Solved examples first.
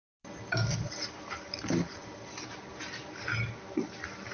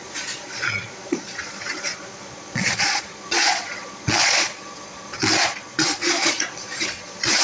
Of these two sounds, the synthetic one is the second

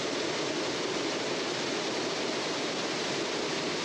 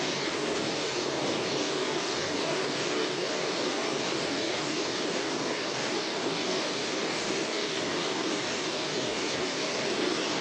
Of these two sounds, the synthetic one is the second